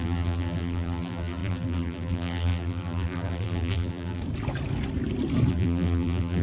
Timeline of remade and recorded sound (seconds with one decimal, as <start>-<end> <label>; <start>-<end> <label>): 0.0-4.2 remade; 4.2-5.5 recorded; 5.5-6.4 remade